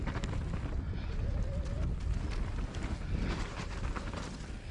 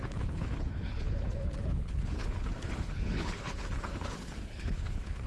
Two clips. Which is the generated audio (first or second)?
second